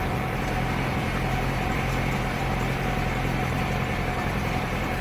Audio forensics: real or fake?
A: fake